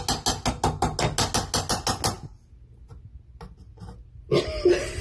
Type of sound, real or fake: real